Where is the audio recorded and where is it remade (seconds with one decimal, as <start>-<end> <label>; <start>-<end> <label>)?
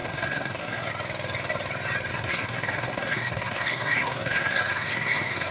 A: 0.0-0.9 remade; 0.9-2.1 recorded; 2.1-5.5 remade